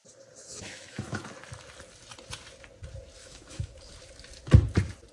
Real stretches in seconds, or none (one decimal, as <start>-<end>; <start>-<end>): 0.0-0.5; 1.2-3.2; 3.8-5.1